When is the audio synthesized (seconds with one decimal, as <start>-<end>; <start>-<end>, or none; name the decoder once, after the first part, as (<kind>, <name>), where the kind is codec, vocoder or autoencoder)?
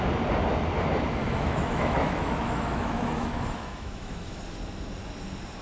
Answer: 1.2-4.4 (autoencoder, DAC-VAE)